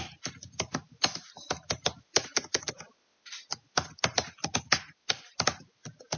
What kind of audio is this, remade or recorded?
recorded